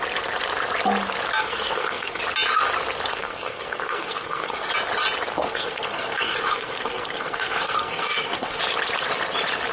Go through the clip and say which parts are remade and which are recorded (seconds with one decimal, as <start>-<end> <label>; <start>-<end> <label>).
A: 0.0-1.4 recorded; 1.4-2.2 remade; 2.2-3.1 recorded; 3.1-4.7 remade; 4.7-5.3 recorded; 5.3-8.6 remade; 8.6-9.7 recorded

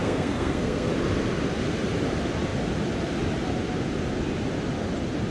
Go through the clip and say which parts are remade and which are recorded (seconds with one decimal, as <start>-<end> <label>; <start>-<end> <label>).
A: 0.0-0.9 remade; 0.9-5.3 recorded

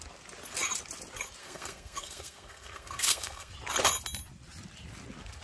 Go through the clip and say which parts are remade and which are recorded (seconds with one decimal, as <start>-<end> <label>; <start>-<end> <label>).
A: 0.0-1.4 recorded; 1.4-3.5 remade; 3.5-5.4 recorded

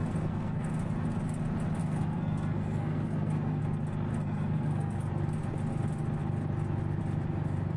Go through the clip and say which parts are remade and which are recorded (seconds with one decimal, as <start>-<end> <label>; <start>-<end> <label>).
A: 0.0-0.7 remade; 0.7-1.8 recorded; 1.8-3.6 remade; 3.6-4.1 recorded; 4.1-5.1 remade; 5.1-7.8 recorded